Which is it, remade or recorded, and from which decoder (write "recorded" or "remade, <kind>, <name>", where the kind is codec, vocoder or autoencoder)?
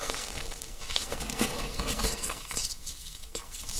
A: remade, codec, SNAC